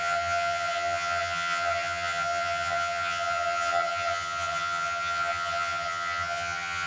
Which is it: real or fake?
fake